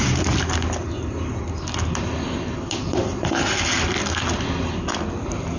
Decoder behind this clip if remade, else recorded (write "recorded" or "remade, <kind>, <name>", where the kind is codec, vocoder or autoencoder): recorded